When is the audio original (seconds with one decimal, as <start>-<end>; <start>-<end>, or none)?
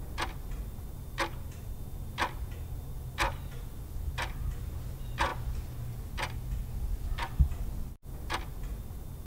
0.0-9.3